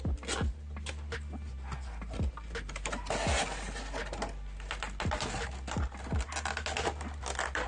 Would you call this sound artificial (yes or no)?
no